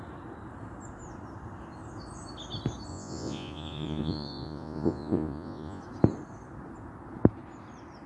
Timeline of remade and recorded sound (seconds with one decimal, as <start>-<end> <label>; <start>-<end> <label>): 0.0-2.9 recorded; 2.9-5.8 remade; 5.8-8.1 recorded

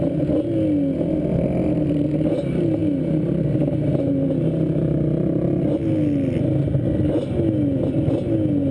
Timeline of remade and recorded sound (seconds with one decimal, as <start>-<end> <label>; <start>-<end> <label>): 0.0-8.7 recorded

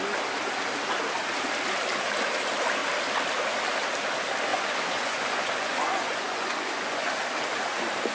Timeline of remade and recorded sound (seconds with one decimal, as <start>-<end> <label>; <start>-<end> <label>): 0.0-4.5 recorded; 4.5-7.2 remade; 7.2-8.1 recorded

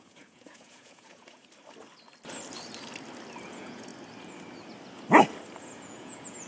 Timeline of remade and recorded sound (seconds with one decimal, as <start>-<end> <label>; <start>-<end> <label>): 0.0-1.4 remade; 1.4-3.4 recorded; 3.4-3.9 remade; 3.9-5.6 recorded; 5.6-6.5 remade

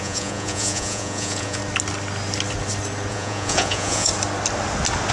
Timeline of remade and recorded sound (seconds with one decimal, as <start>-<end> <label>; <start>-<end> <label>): 0.0-1.6 remade; 1.6-3.1 recorded; 3.1-4.1 remade; 4.1-5.1 recorded

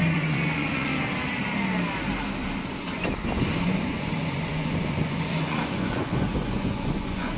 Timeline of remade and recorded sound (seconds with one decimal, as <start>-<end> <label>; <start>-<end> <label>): 0.0-0.9 remade; 0.9-3.6 recorded; 3.6-7.4 remade